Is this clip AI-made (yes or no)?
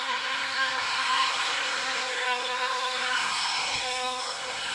yes